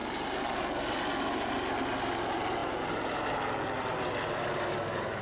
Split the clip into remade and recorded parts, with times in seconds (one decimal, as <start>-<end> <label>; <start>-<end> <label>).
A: 0.0-5.2 recorded